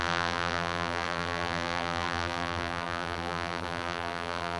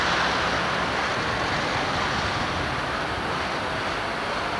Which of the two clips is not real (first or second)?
first